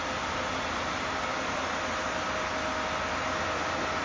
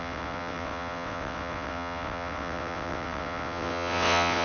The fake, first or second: second